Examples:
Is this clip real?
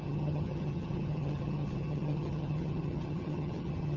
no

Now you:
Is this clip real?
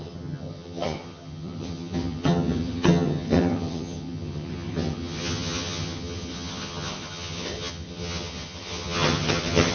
no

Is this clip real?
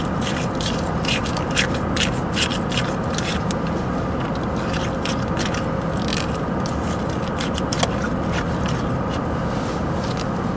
yes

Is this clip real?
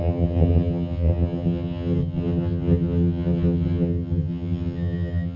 no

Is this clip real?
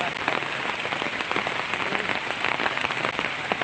yes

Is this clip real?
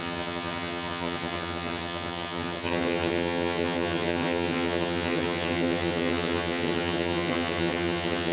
no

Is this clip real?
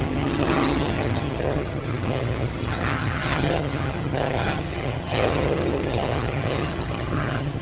no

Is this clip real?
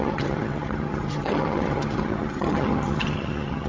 no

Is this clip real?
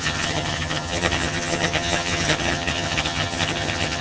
no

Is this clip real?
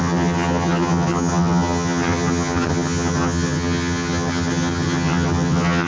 no